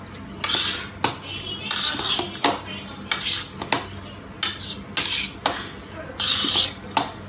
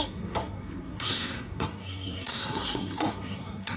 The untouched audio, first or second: first